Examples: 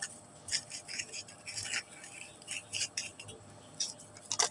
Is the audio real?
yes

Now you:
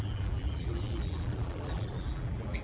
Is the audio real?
no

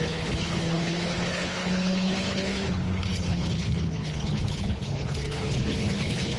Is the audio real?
no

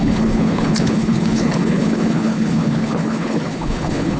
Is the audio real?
no